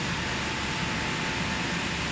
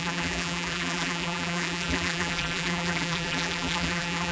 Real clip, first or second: first